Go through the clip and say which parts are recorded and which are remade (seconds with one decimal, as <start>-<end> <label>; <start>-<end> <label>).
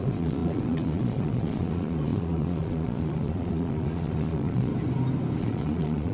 0.0-4.7 remade; 4.7-5.4 recorded; 5.4-6.1 remade